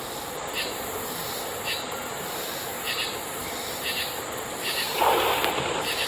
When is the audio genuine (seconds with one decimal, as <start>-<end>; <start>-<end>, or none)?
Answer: 0.0-6.1